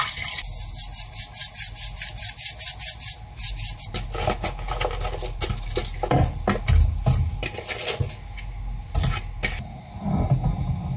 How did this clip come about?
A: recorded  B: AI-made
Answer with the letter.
A